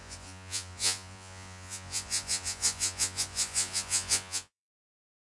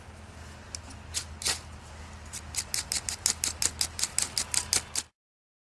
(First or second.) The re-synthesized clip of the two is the first